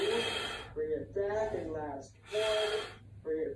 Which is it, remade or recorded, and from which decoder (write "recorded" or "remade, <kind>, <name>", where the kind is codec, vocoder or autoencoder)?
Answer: recorded